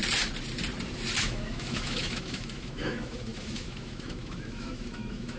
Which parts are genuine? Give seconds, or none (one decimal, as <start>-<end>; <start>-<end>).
0.0-1.2